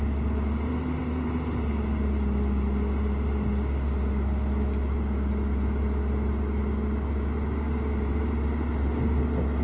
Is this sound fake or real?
real